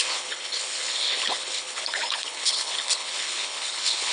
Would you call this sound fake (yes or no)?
yes